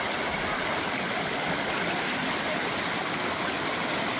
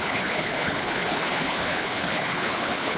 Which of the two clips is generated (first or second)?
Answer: second